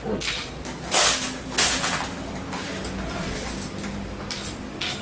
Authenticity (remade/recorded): recorded